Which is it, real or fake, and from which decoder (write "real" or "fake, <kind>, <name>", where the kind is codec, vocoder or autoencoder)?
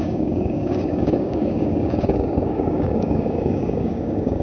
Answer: fake, codec, DAC